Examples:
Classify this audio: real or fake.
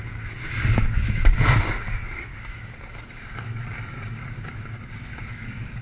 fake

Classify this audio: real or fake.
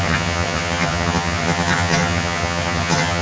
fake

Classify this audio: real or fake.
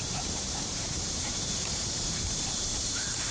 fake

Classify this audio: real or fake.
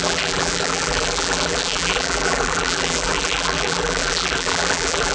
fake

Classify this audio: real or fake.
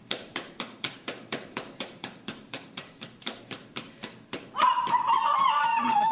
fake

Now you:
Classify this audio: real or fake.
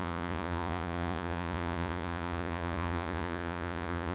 fake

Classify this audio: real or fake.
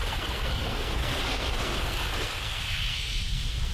fake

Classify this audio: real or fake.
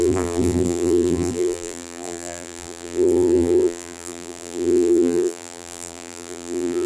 fake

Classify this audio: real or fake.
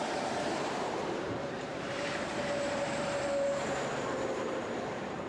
fake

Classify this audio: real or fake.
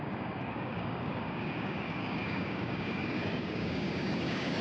fake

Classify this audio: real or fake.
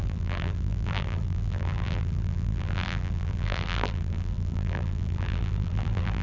fake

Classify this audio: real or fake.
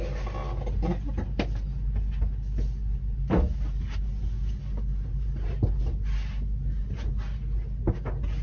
real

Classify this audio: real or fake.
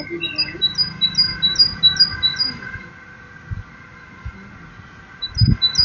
real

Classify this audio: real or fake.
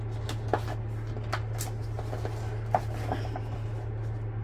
real